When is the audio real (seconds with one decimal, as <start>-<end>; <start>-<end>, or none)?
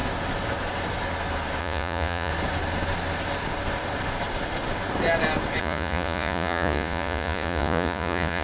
0.0-1.6; 2.3-5.6